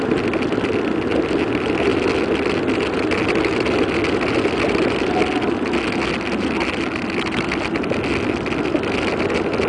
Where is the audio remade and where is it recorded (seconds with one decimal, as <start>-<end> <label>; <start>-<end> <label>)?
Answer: 0.0-9.7 recorded

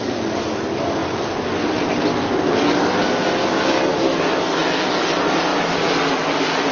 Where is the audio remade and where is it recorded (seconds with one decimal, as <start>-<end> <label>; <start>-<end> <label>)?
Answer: 0.0-3.9 recorded; 3.9-4.9 remade; 4.9-6.7 recorded